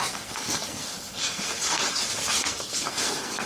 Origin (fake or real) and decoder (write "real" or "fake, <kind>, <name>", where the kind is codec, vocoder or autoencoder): fake, codec, SNAC